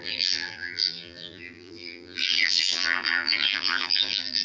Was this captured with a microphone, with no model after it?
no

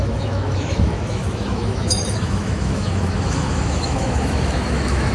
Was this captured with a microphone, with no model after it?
no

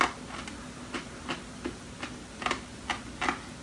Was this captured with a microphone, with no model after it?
yes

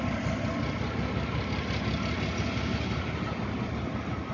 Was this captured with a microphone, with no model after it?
yes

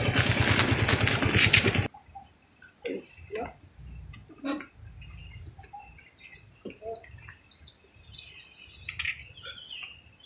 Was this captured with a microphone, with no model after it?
yes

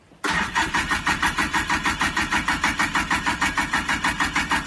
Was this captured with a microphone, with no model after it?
no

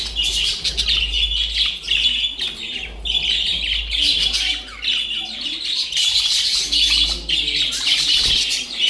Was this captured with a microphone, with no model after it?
yes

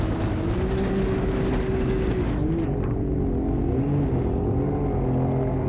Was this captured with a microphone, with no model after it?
yes